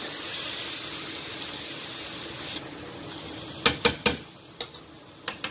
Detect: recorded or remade recorded